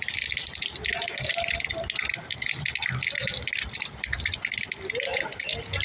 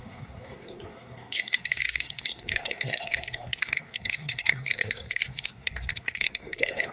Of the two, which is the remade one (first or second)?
second